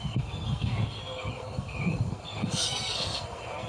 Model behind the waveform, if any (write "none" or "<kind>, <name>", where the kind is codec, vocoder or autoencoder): codec, SNAC